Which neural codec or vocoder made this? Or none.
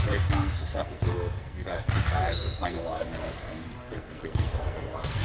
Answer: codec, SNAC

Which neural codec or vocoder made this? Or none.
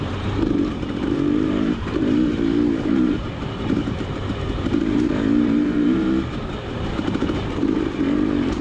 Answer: vocoder, BigVGAN v2